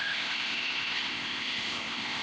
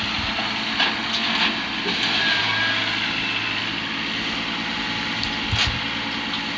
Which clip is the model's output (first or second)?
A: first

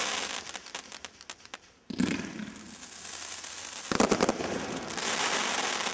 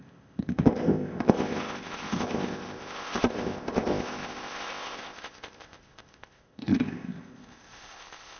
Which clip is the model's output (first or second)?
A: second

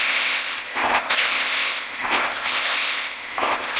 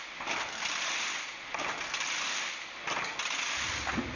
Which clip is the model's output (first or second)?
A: first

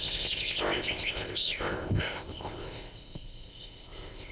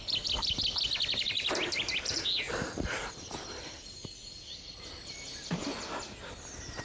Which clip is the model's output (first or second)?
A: first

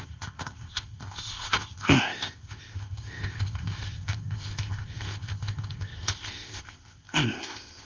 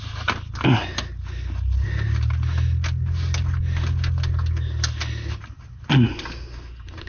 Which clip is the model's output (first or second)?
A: first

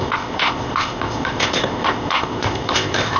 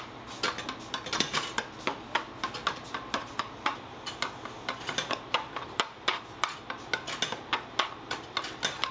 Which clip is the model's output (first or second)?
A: first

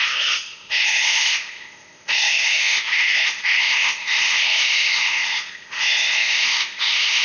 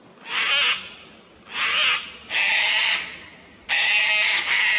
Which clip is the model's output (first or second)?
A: first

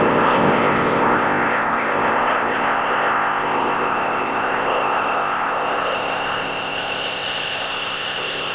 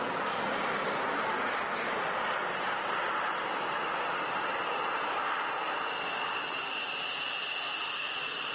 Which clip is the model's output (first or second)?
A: first